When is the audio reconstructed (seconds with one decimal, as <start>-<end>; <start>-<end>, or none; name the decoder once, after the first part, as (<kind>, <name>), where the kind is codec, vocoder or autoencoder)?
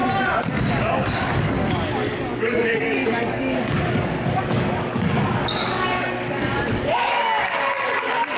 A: 0.8-8.4 (codec, DAC)